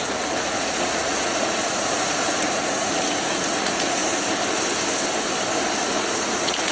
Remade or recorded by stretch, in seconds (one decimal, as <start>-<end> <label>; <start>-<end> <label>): 0.0-4.0 remade; 4.0-5.8 recorded; 5.8-6.7 remade